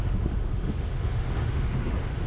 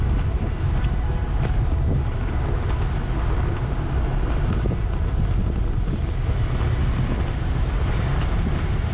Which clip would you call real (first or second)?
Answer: second